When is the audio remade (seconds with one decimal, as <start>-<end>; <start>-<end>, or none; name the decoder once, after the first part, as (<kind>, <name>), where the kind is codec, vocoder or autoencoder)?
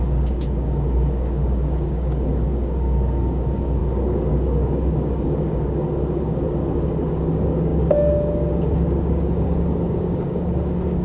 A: 0.0-11.0 (codec, DAC)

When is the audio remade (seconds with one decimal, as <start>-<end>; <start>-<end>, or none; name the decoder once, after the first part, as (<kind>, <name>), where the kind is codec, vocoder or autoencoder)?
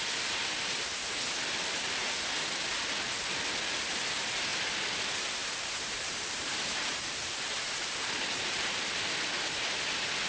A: 5.4-8.9 (vocoder, BigVGAN v2)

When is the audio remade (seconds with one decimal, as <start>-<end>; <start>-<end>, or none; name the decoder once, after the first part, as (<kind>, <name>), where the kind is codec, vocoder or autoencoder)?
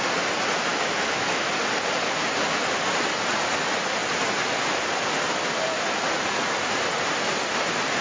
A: 0.7-1.5 (autoencoder, DAC-VAE)